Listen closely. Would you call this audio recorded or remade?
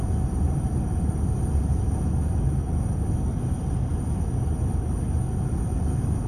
recorded